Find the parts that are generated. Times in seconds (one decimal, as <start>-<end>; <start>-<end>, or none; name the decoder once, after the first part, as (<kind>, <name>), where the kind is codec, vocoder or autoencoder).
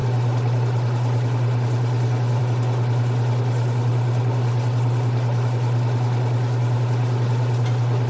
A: none